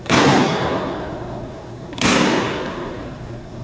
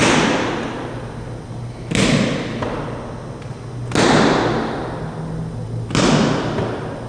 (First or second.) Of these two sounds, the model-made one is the first